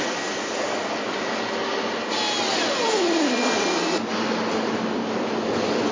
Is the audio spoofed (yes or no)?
no